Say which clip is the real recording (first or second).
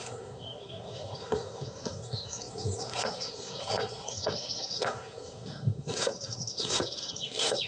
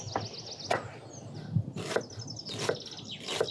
second